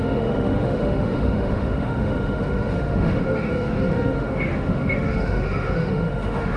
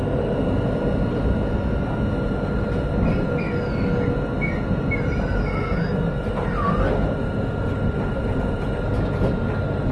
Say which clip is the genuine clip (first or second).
second